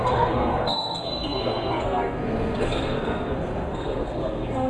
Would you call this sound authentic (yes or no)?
no